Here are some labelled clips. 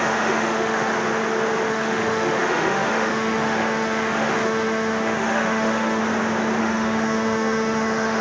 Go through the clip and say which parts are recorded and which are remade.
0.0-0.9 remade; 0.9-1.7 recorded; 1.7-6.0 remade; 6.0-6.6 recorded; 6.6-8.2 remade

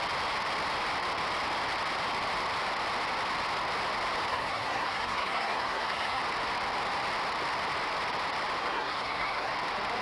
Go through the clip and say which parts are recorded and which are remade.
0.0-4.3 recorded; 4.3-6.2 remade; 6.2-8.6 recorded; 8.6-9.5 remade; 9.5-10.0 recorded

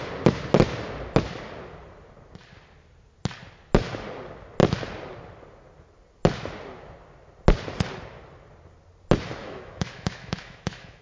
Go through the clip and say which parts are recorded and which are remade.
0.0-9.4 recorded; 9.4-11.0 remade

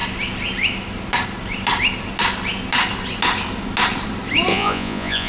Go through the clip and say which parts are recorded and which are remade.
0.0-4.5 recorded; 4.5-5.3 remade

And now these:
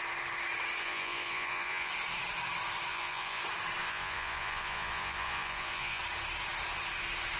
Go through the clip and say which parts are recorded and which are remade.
0.0-0.8 recorded; 0.8-1.9 remade; 1.9-2.9 recorded; 2.9-3.4 remade; 3.4-3.8 recorded; 3.8-6.0 remade; 6.0-7.4 recorded